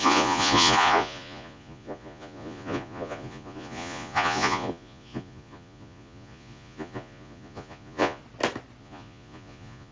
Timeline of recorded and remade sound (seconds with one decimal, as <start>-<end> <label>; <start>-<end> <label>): 0.0-8.2 remade; 8.2-8.8 recorded; 8.8-9.9 remade